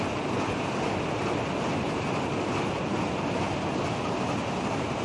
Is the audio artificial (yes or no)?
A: no